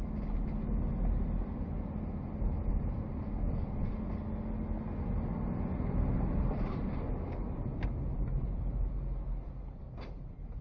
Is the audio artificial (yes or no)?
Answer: no